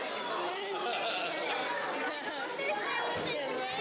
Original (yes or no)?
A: yes